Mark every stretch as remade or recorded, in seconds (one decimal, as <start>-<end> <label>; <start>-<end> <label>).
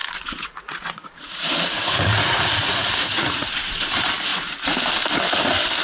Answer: 0.0-3.5 remade; 3.5-4.3 recorded; 4.3-4.8 remade; 4.8-5.8 recorded